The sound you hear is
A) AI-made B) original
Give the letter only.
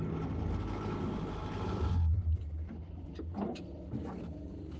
B